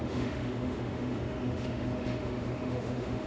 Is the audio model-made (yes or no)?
yes